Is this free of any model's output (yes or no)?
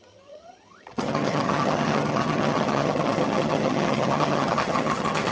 no